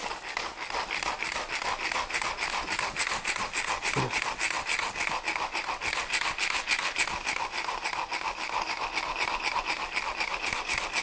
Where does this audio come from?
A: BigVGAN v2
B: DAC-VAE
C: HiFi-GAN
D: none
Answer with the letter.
D